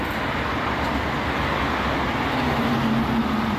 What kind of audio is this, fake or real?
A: real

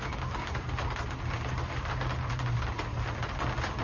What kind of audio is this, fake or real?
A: real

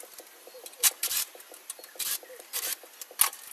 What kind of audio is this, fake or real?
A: real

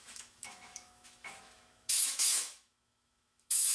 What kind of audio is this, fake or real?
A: fake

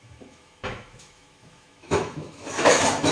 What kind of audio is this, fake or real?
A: fake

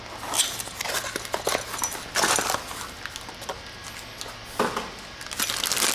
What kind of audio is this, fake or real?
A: real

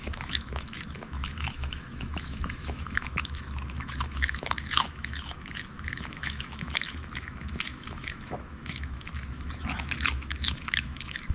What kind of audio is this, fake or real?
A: fake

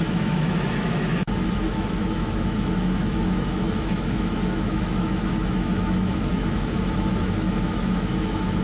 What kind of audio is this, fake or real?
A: fake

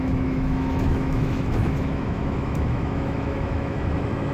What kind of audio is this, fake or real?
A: fake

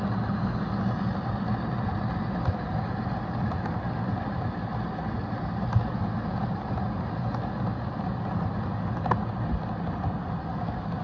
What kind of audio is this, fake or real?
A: real